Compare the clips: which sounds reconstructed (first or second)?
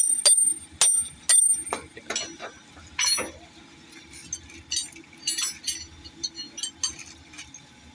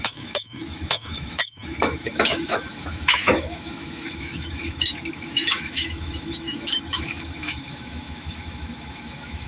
second